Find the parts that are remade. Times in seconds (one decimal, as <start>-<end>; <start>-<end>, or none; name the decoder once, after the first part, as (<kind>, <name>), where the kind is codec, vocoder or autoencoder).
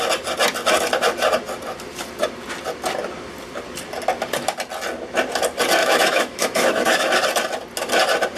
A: 5.8-7.1 (autoencoder, DAC-VAE)